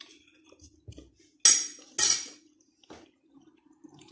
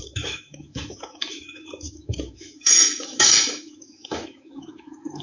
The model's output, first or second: second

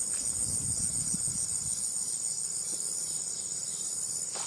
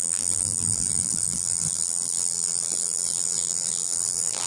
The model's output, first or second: second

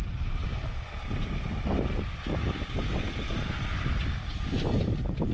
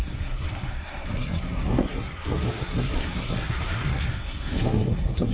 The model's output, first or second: second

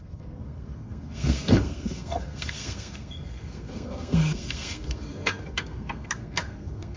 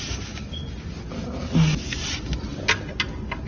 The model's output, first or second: first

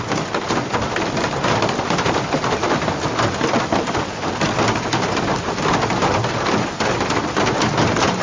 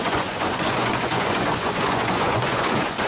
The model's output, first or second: second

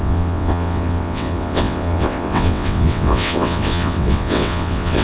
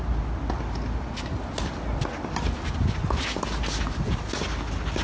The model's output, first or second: first